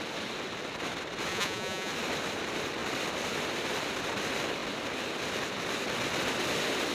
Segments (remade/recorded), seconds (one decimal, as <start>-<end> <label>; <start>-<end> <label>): 0.0-1.3 recorded; 1.3-1.9 remade; 1.9-6.9 recorded